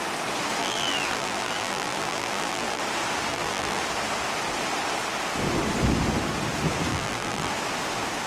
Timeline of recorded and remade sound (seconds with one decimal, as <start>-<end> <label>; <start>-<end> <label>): 0.0-0.6 recorded; 0.6-2.8 remade; 2.8-3.3 recorded; 3.3-3.8 remade; 3.8-6.9 recorded; 6.9-7.5 remade; 7.5-8.3 recorded